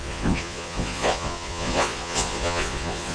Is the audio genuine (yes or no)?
no